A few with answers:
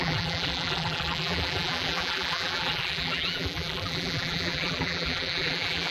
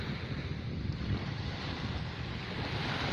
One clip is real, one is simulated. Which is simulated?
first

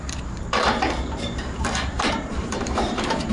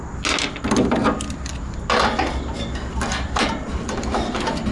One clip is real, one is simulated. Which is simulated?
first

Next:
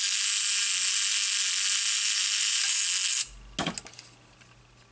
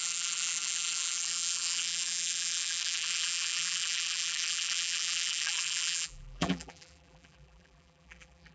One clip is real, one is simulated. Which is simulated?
second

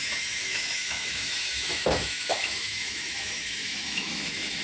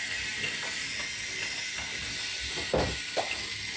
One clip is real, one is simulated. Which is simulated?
first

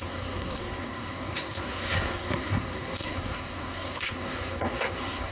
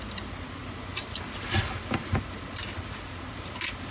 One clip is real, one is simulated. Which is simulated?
first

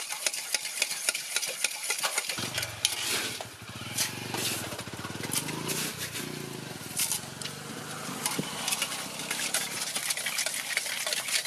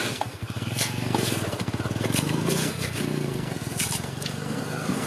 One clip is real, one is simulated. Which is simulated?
second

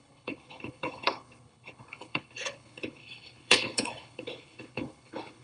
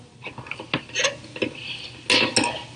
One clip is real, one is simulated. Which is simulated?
first